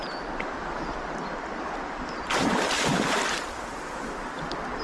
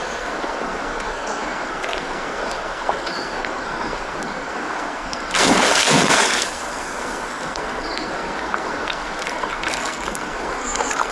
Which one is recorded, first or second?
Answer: first